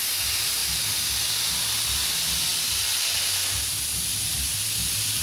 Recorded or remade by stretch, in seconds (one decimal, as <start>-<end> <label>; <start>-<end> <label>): 0.0-5.2 recorded